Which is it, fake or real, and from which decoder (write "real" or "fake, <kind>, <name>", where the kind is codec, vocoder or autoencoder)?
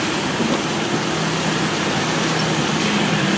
real